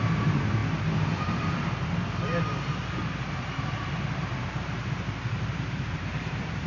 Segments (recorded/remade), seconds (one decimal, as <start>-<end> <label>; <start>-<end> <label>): 0.0-6.7 remade